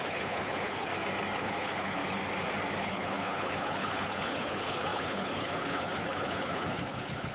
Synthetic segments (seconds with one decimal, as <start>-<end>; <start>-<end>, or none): 0.0-0.9; 1.4-2.0; 2.8-7.3